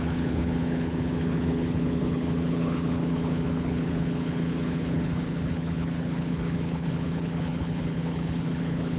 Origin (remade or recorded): remade